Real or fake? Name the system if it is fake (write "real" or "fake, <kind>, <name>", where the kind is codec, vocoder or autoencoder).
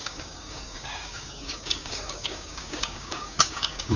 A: fake, codec, DAC